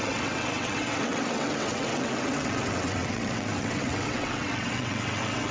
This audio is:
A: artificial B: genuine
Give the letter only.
A